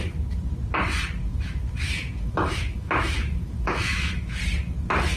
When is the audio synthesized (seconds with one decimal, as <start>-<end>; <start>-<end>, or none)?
1.3-4.4